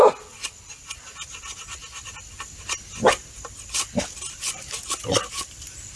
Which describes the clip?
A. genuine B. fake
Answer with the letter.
A